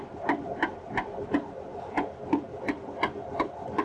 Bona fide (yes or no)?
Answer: yes